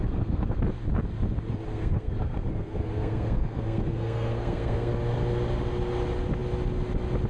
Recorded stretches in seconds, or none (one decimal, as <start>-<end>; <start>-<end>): 0.6-1.7; 4.9-7.3